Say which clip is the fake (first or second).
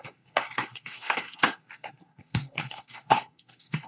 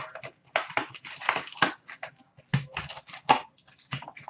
first